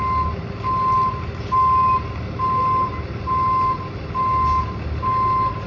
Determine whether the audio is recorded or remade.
recorded